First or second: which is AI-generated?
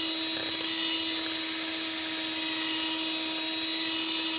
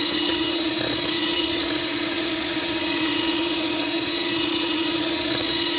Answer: second